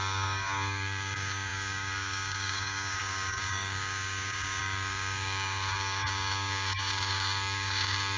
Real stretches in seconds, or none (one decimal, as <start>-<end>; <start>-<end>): none